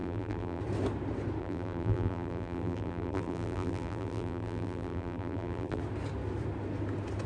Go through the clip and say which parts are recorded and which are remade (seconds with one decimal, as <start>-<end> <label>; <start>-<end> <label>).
0.0-0.6 remade; 0.6-1.4 recorded; 1.4-5.8 remade; 5.8-7.3 recorded